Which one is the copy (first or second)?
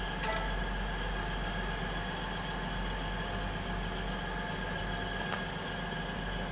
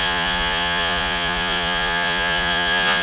second